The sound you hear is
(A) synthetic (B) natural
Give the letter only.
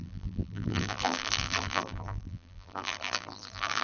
A